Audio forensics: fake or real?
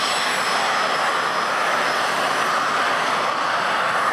real